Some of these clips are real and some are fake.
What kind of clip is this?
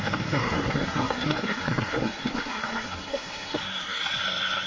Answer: fake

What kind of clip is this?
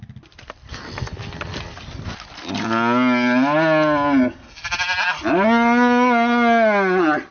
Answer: real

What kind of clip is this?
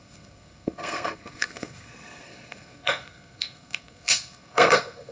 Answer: fake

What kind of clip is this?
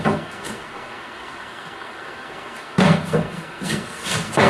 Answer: fake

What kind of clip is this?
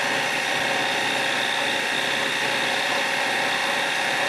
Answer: real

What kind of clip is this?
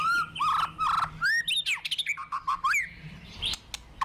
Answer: real